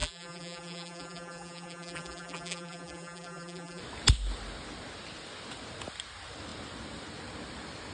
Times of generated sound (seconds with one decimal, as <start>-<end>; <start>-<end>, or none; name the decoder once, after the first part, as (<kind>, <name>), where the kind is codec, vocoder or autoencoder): 0.0-3.8 (vocoder, BigVGAN v2)